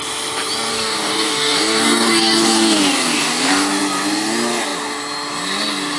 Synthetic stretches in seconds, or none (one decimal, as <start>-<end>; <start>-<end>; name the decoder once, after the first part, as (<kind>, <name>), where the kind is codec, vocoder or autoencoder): 0.7-3.7 (codec, DAC)